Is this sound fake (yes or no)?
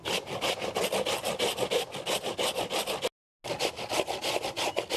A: no